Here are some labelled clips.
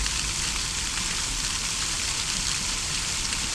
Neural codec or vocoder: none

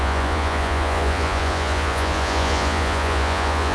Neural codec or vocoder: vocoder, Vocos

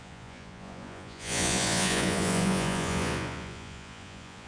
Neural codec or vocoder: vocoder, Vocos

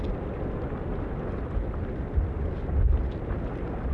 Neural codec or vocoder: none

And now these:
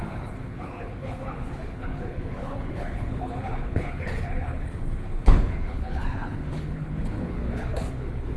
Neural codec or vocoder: codec, HILCodec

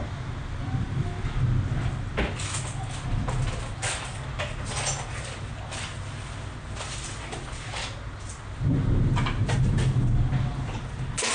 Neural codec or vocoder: none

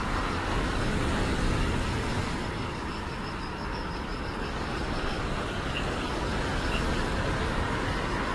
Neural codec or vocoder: codec, DAC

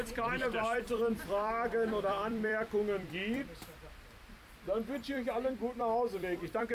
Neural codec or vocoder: vocoder, BigVGAN v2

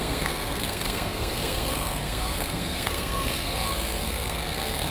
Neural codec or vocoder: codec, SNAC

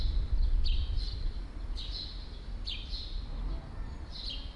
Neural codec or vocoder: none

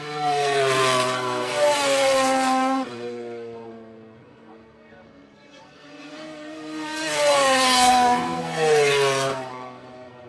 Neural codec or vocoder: codec, SNAC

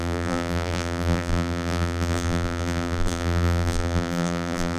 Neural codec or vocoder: vocoder, BigVGAN v2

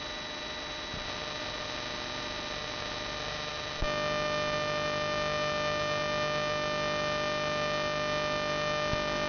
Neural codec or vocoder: none